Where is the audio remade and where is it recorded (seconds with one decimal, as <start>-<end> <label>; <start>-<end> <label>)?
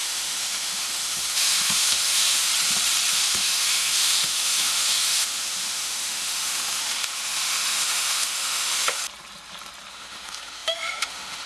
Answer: 0.0-2.5 remade; 2.5-3.1 recorded; 3.1-9.0 remade; 9.0-9.9 recorded; 9.9-11.5 remade